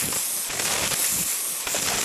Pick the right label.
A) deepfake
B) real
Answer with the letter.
B